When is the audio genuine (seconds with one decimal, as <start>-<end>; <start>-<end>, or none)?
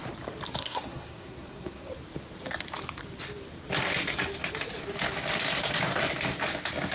0.0-0.6; 1.9-6.9